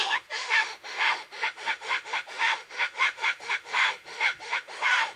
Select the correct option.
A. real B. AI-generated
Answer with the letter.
B